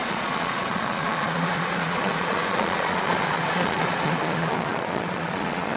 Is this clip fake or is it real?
fake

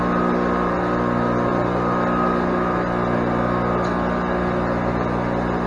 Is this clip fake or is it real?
real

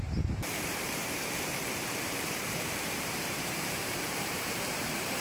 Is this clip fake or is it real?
fake